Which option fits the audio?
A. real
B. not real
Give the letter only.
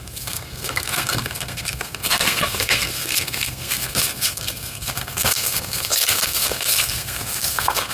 B